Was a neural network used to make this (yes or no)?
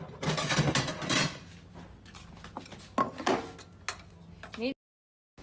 no